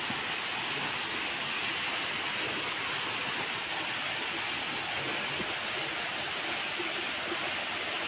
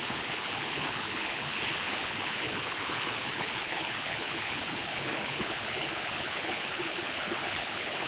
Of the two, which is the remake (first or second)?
second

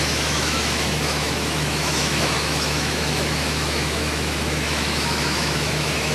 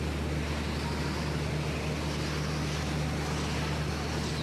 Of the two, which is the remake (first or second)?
first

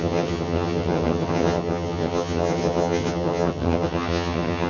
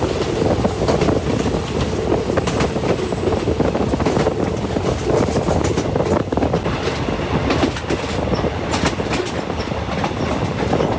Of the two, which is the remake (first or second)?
first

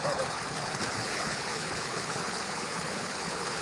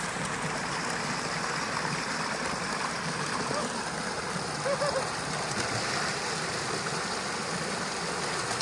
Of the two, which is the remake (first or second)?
first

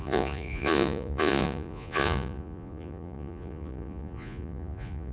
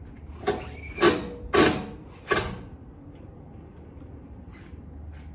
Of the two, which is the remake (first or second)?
first